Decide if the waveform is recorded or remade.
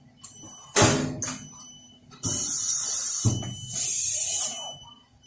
recorded